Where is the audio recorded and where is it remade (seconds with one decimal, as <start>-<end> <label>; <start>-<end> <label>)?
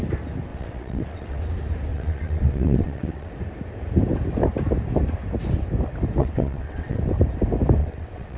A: 0.0-0.5 recorded; 0.5-1.5 remade; 1.5-1.9 recorded; 1.9-3.3 remade; 3.3-6.2 recorded; 6.2-7.0 remade; 7.0-7.8 recorded; 7.8-8.4 remade